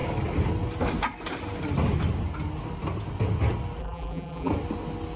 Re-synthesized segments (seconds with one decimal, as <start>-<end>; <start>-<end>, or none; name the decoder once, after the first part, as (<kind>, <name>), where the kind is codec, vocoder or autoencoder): 3.8-4.5 (vocoder, BigVGAN v2)